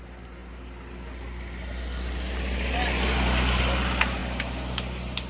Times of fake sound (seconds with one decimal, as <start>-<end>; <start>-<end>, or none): none

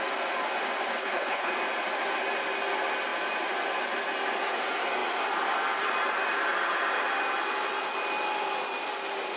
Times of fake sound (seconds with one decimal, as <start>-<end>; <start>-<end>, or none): 1.0-1.5

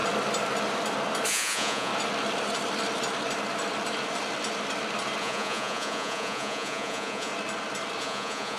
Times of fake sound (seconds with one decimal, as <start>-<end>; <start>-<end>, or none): 1.3-1.9; 5.2-7.3; 8.0-8.6

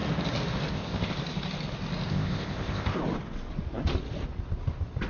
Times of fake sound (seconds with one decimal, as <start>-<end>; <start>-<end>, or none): 0.7-1.1; 2.1-3.0

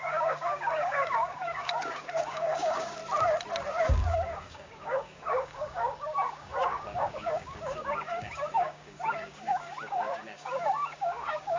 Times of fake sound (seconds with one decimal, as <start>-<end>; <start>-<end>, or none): 0.0-3.0; 3.8-11.6

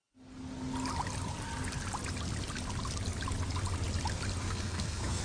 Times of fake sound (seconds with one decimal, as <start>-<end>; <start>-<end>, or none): 4.4-5.2

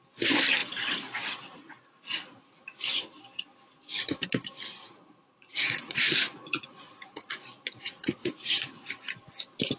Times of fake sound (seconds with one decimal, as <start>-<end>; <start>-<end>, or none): 0.6-2.6; 4.8-9.0